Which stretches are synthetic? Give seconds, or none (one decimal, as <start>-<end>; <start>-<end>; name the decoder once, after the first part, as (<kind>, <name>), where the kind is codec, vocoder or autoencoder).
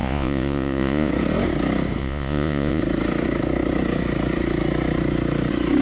0.0-1.1 (vocoder, Vocos); 2.0-2.8